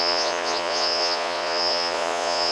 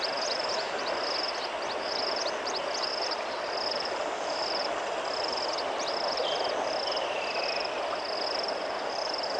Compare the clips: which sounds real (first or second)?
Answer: second